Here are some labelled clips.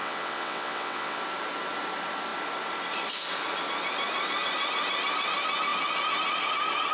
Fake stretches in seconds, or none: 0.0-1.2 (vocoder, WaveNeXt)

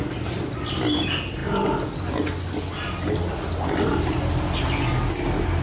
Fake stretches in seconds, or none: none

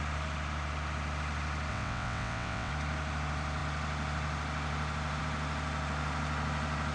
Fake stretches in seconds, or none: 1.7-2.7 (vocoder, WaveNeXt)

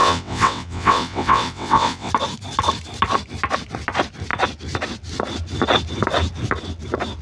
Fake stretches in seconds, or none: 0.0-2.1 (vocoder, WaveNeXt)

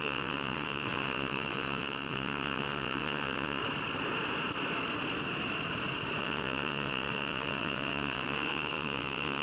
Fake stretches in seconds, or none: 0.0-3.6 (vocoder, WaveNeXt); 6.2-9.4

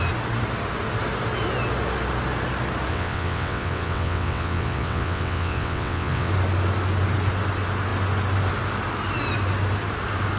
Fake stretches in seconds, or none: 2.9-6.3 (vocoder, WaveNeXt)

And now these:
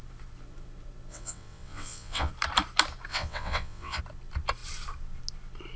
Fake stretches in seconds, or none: 1.1-2.3 (vocoder, WaveNeXt); 3.1-4.0